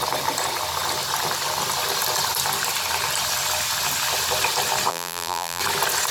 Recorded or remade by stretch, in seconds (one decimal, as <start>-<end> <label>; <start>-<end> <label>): 0.0-4.9 recorded; 4.9-5.6 remade; 5.6-6.1 recorded